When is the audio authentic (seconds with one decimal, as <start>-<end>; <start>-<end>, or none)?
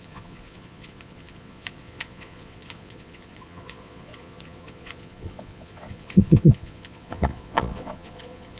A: none